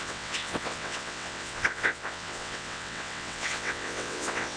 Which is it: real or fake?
fake